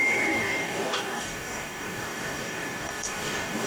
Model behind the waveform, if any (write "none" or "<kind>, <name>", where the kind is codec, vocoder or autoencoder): codec, DAC